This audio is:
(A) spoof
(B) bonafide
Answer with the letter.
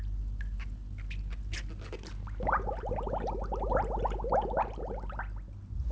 B